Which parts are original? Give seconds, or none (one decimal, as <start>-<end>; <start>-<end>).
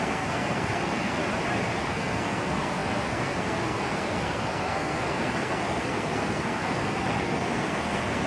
1.2-1.8